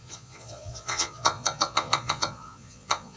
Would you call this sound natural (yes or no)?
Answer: no